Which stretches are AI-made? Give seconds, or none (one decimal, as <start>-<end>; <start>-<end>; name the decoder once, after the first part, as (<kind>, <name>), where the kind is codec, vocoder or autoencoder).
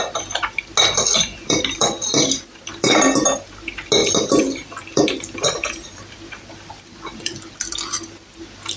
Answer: 1.4-2.9 (vocoder, BigVGAN v2); 4.0-8.8